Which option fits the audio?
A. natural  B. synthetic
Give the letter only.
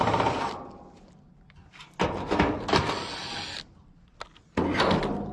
A